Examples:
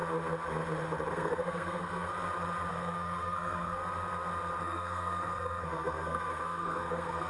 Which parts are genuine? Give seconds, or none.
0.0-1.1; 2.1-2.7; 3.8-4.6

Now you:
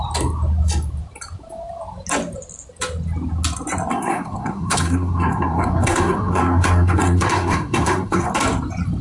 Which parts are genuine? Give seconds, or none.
0.0-3.9; 8.3-9.0

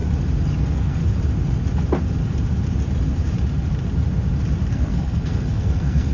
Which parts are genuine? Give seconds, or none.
0.0-0.6; 1.0-4.7

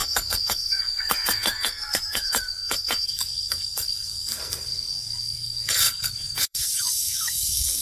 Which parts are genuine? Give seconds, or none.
none

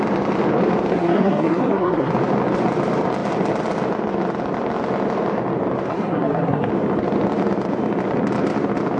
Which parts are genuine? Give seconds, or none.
0.0-0.9; 2.1-5.9; 6.7-9.0